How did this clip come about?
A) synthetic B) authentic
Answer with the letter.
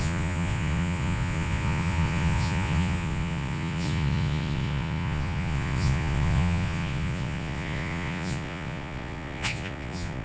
A